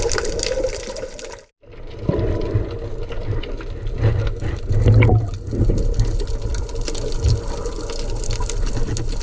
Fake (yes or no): no